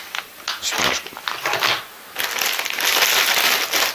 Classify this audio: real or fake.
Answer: real